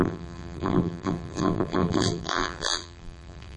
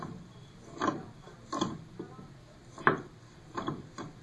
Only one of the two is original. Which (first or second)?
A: second